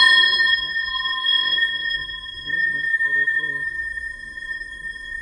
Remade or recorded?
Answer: remade